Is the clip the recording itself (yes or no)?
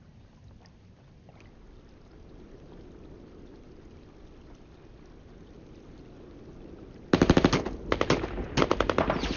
yes